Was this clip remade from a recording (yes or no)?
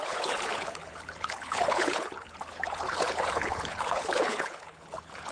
yes